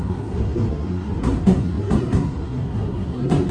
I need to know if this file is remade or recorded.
remade